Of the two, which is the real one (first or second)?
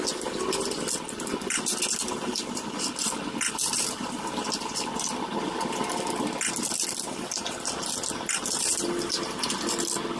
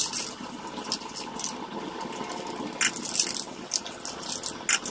second